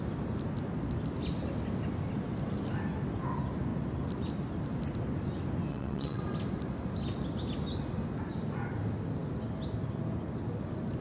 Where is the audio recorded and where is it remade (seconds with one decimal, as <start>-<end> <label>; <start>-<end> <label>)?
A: 0.0-5.7 recorded; 5.7-6.2 remade; 6.2-11.0 recorded